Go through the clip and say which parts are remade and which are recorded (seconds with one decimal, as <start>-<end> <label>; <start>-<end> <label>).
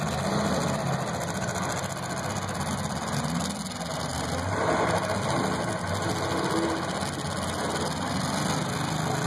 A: 0.0-9.3 recorded